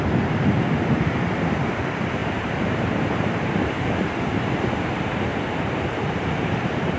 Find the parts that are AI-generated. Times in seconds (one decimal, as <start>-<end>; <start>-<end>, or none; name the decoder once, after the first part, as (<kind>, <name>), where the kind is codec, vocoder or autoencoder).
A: 2.2-3.6 (vocoder, BigVGAN v2); 5.3-7.0